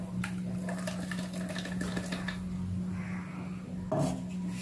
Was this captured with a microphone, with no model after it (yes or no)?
yes